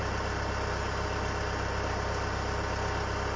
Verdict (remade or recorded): recorded